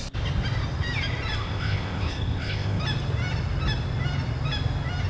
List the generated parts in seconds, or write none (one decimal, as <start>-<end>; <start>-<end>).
1.4-2.8